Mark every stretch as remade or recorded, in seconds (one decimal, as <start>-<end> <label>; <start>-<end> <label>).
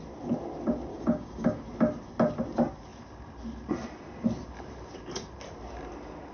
0.0-0.9 recorded; 0.9-1.6 remade; 1.6-6.3 recorded